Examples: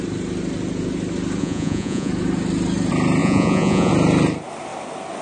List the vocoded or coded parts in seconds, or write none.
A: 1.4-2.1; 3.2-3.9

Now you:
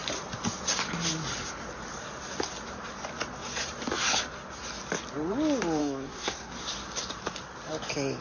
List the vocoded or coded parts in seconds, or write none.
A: 5.8-6.5

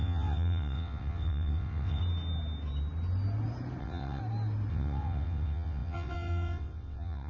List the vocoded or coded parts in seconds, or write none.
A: 0.0-2.0; 3.8-4.2; 4.7-7.3

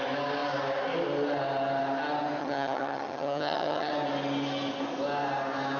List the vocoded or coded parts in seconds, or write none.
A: 2.4-3.9

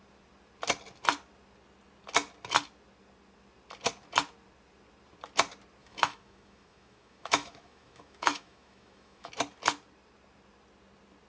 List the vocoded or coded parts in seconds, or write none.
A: 5.8-9.3